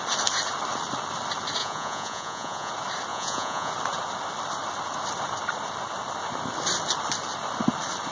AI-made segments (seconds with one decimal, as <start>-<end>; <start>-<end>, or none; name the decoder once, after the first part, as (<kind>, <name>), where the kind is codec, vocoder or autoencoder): 1.6-2.7 (vocoder, Vocos); 3.1-3.7